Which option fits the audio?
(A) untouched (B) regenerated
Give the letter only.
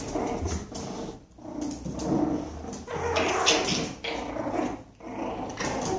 A